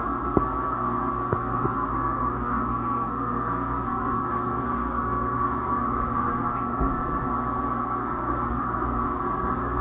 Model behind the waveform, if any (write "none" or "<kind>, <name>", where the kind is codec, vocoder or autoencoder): codec, SNAC